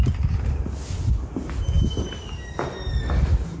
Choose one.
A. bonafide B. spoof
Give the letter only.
A